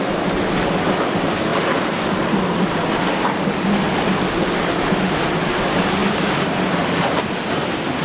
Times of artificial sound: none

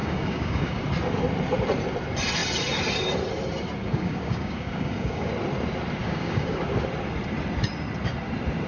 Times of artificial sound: 0.0-0.8 (codec, DAC); 3.8-5.3; 6.0-6.6

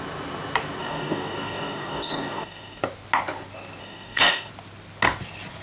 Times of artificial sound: 0.8-2.8 (codec, DAC); 3.8-4.5

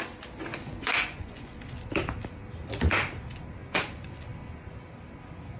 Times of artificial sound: 0.5-1.6 (vocoder, Vocos); 3.6-4.1

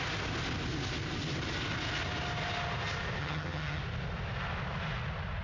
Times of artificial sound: 3.2-3.8 (vocoder, HiFi-GAN)

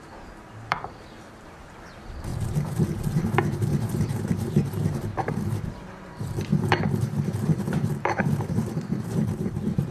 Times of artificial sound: 0.0-9.9 (vocoder, BigVGAN v2)